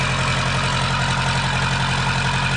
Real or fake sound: real